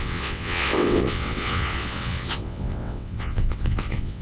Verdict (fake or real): fake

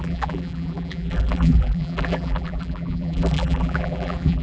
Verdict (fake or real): fake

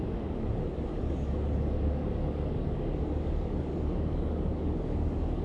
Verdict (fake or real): fake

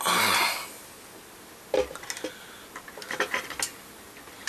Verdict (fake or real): real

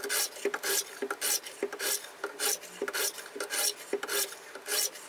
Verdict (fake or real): real